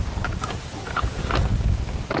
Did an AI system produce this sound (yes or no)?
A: no